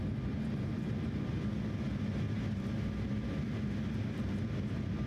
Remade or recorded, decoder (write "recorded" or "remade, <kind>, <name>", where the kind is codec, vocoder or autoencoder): recorded